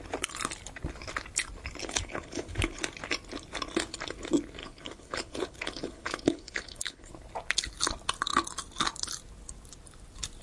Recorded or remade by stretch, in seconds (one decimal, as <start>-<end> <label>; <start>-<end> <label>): 0.0-1.8 recorded; 1.8-2.8 remade; 2.8-4.6 recorded; 4.6-7.1 remade; 7.1-10.4 recorded